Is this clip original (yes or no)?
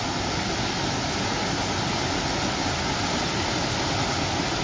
yes